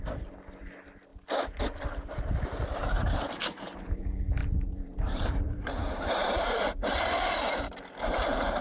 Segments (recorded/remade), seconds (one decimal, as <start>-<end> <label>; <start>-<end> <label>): 0.0-2.8 recorded; 2.8-4.0 remade; 4.0-4.4 recorded; 4.4-7.4 remade; 7.4-8.6 recorded